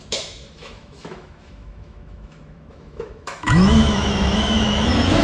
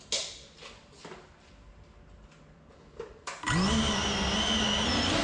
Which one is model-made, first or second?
first